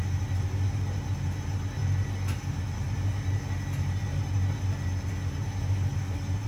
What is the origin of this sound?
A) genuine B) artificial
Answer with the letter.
A